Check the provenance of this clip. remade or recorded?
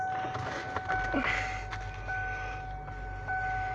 recorded